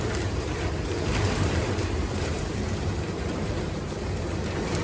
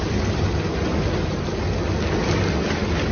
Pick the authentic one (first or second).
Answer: second